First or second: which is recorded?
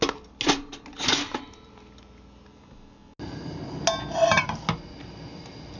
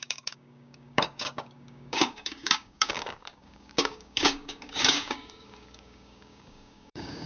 first